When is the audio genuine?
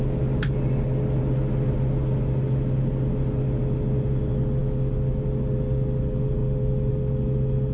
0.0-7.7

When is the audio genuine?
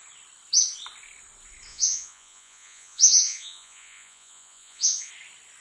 0.0-1.7; 5.1-5.6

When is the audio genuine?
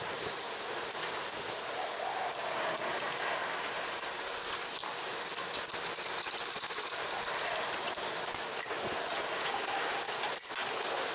0.0-11.1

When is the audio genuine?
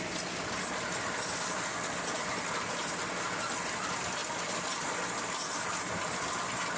0.0-6.8